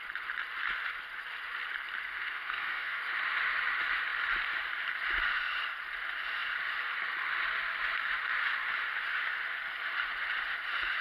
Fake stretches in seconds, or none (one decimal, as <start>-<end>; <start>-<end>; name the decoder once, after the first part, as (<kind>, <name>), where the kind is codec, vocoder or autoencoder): 2.1-3.0 (codec, SNAC)

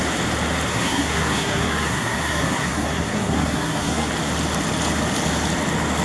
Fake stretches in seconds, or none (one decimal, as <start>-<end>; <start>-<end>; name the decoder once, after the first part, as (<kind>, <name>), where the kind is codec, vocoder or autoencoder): 0.7-4.1 (codec, SNAC)

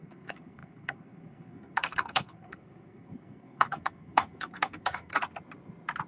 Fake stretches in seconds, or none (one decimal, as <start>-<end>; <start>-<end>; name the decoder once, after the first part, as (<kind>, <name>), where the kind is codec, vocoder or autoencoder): 0.0-5.1 (codec, SNAC)